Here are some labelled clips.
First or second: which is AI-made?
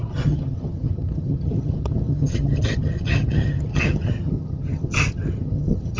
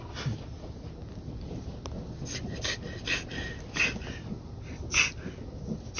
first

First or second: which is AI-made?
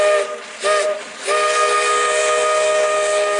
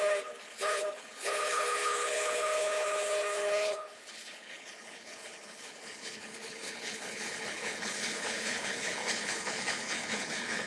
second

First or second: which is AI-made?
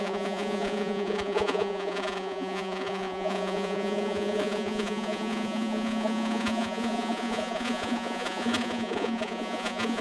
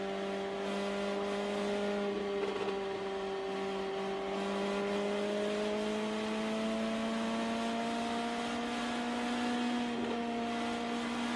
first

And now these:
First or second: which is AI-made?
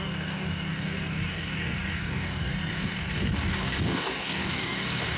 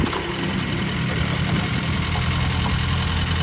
first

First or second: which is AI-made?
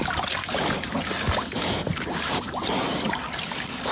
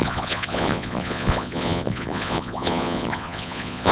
second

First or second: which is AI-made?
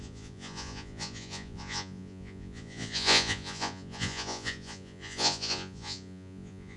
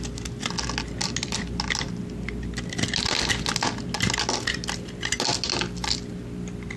first